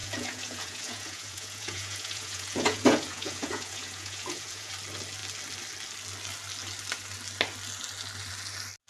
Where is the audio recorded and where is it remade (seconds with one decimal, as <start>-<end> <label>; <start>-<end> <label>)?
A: 0.0-4.7 remade; 4.7-8.9 recorded